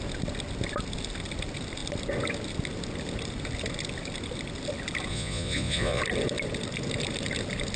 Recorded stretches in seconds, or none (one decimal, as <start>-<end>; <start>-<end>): 0.0-5.1; 6.0-7.8